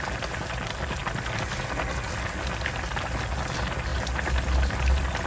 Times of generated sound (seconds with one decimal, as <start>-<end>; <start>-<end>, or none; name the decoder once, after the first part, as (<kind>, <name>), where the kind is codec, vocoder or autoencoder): none